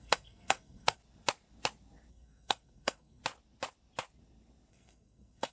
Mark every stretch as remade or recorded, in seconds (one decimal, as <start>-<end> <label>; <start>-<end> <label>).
0.0-1.0 remade; 1.0-2.1 recorded; 2.1-3.2 remade; 3.2-4.7 recorded; 4.7-5.5 remade